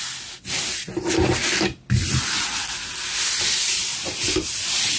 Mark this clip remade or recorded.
recorded